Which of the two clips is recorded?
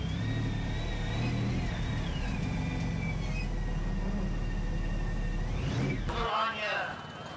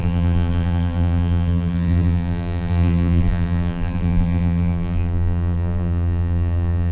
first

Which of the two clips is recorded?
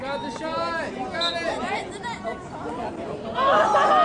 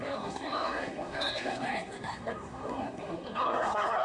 first